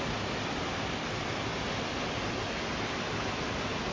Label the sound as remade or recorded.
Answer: recorded